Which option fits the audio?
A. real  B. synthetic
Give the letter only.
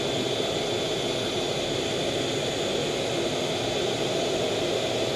A